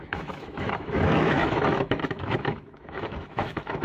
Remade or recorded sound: remade